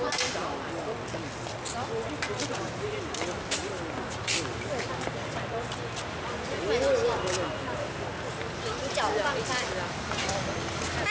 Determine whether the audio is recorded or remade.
recorded